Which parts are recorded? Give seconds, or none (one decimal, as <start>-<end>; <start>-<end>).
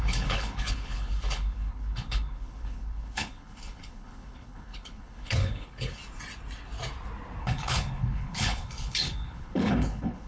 6.0-7.4